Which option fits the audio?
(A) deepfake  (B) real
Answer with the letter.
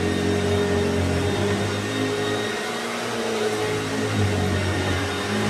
B